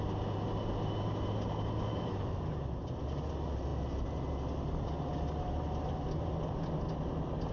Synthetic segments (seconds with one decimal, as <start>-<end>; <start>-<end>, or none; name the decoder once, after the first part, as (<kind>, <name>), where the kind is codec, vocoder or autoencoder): 1.9-2.4 (autoencoder, DAC-VAE)